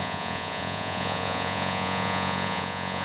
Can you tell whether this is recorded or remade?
remade